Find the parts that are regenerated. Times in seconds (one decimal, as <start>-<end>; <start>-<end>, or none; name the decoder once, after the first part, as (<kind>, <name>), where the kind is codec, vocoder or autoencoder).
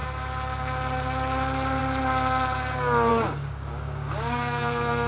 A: 3.1-5.1 (codec, DAC)